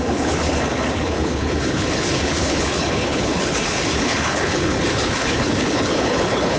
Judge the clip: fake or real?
fake